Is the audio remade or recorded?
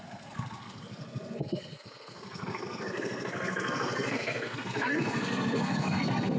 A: remade